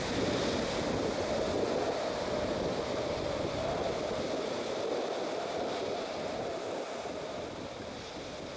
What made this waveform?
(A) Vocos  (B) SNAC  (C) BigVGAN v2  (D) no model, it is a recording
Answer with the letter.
D